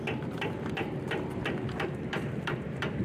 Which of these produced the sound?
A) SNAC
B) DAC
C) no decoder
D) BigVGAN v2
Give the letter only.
D